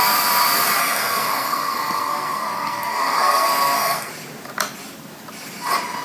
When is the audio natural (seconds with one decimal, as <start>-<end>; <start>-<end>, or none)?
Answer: 0.0-0.8; 4.1-6.0